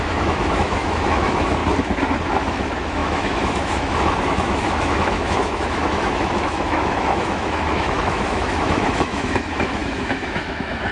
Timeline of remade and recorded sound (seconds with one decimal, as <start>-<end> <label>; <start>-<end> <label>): 0.0-1.6 remade; 1.6-2.3 recorded; 2.3-10.9 remade